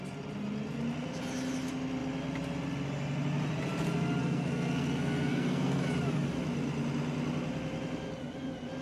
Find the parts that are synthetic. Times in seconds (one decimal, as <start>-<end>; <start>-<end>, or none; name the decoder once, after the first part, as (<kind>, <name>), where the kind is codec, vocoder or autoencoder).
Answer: 4.2-5.8 (codec, SNAC)